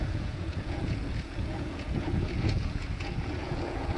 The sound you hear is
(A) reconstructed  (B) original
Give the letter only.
A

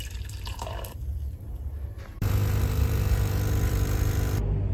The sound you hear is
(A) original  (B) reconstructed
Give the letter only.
B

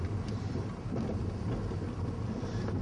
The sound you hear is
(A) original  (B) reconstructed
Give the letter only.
B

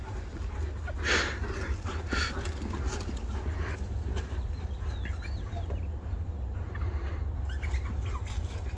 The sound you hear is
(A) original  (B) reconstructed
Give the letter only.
A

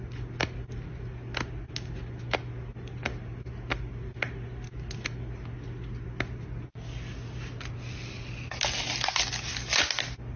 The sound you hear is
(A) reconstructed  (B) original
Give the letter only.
B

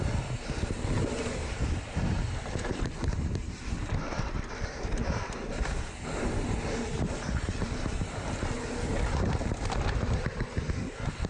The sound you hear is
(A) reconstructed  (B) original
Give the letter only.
B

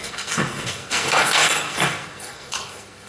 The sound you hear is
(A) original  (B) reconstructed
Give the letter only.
B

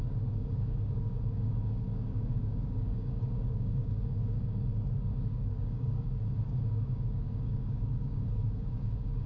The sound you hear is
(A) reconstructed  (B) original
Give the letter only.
A